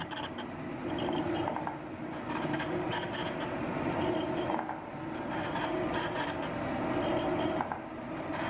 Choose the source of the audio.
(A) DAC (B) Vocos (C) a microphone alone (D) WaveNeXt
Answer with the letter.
C